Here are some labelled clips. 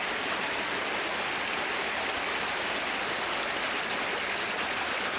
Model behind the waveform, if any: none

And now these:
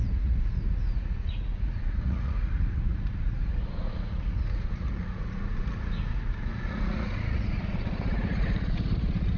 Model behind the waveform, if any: vocoder, Vocos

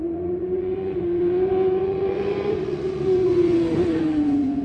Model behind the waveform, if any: vocoder, Vocos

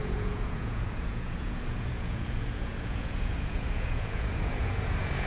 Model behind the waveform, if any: vocoder, Vocos